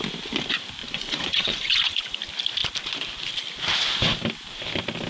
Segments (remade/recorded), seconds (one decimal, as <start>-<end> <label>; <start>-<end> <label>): 0.0-0.8 recorded; 0.8-2.2 remade; 2.2-5.1 recorded